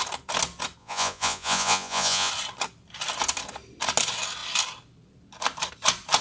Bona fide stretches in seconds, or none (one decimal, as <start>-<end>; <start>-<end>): 0.0-0.8; 2.3-6.2

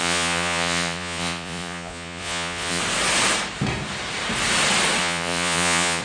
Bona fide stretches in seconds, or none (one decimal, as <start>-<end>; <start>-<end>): 2.8-5.0

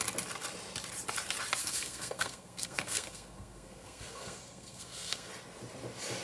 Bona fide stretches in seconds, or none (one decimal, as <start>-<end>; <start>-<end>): 0.0-1.6; 5.3-6.2

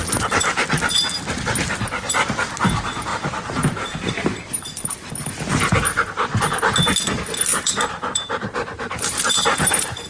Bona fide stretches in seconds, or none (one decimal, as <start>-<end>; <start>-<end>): 0.0-3.1; 5.1-7.5